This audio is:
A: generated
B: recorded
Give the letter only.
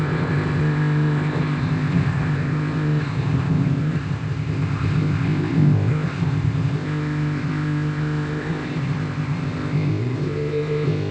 A